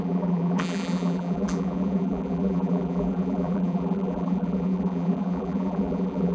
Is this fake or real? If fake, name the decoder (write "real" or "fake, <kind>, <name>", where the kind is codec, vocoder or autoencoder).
fake, vocoder, BigVGAN v2